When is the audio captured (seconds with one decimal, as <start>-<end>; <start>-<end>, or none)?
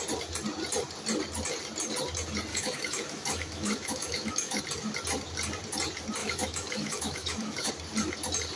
0.0-2.5; 4.6-6.2; 7.7-8.6